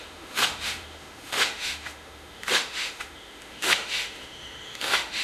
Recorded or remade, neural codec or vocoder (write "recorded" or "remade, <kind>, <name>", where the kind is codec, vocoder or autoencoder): remade, autoencoder, DAC-VAE